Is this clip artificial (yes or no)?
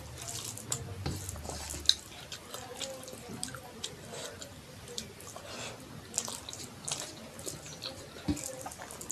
no